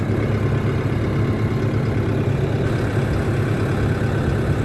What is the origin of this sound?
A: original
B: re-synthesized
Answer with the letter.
A